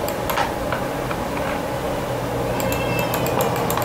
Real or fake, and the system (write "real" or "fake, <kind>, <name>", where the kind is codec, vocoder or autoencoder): real